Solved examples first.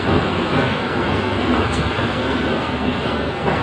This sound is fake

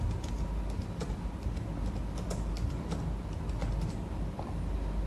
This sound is real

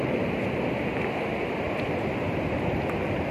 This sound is real